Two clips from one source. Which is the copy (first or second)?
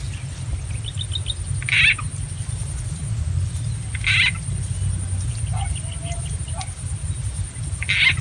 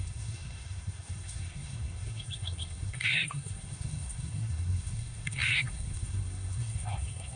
second